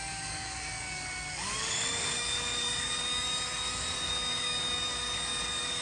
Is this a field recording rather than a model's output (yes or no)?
no